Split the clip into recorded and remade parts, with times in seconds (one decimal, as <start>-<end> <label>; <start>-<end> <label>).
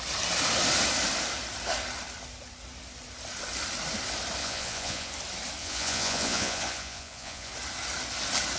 0.0-4.4 recorded; 4.4-5.1 remade; 5.1-5.6 recorded; 5.6-7.5 remade; 7.5-8.6 recorded